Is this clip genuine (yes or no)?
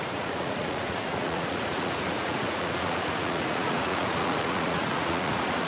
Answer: no